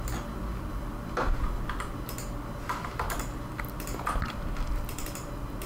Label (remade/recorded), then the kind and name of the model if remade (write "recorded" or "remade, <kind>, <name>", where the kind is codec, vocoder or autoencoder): recorded